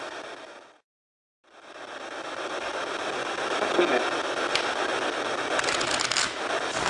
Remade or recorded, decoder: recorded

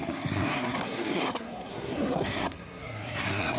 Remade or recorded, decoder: remade, codec, SNAC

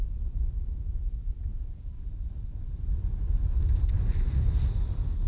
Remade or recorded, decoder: recorded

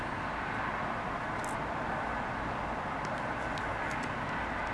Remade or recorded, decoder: recorded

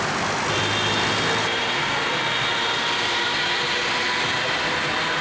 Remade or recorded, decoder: recorded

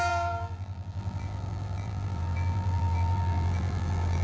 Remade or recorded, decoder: remade, vocoder, BigVGAN v2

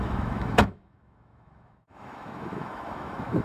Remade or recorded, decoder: remade, autoencoder, DAC-VAE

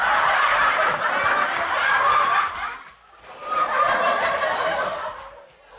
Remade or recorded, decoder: recorded